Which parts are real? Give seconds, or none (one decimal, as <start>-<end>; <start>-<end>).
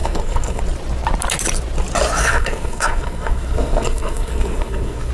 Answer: 0.6-2.2